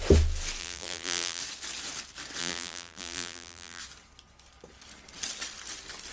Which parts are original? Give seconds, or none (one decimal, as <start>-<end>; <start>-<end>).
0.0-0.6; 1.4-2.4; 3.8-6.1